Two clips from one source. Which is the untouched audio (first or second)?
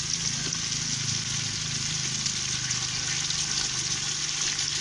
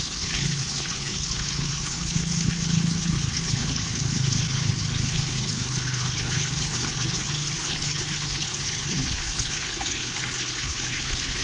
first